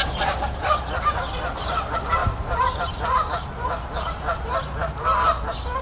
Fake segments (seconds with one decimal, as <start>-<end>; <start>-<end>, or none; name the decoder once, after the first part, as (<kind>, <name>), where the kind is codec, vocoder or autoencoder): 0.0-5.8 (vocoder, BigVGAN v2)